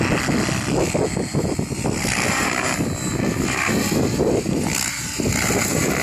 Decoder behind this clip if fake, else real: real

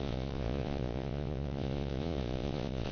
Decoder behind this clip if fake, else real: fake, vocoder, Vocos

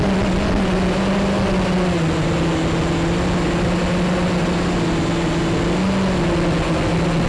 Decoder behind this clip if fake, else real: real